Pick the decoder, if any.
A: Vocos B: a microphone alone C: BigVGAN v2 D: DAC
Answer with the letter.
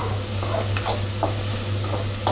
B